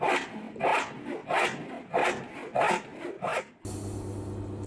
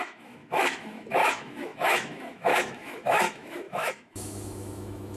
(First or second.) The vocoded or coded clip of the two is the second